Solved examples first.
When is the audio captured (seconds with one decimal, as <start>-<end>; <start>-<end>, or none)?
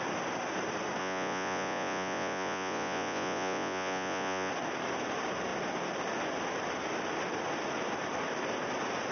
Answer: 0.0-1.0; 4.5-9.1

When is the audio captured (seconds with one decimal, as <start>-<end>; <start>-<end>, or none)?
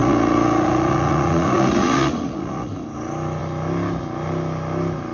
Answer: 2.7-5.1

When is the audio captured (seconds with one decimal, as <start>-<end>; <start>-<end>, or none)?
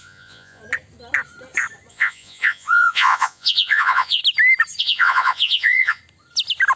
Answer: 0.6-1.9; 4.2-4.8; 6.0-6.8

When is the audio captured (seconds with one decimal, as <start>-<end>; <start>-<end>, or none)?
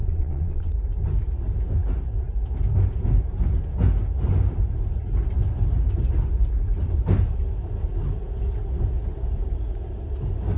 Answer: 0.7-10.6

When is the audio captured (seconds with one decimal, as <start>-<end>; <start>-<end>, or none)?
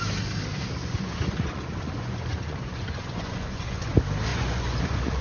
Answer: 0.0-0.8; 3.9-4.3